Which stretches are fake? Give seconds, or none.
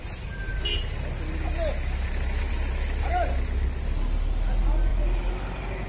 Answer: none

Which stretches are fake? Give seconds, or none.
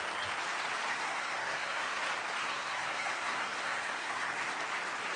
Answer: 0.9-2.0 (codec, SNAC); 2.4-4.5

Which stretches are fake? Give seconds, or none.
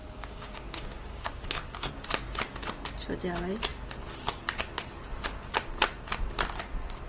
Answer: 0.0-1.9 (codec, DAC)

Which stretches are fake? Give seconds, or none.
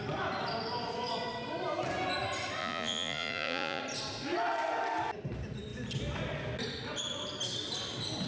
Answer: 2.6-3.8 (vocoder, Vocos)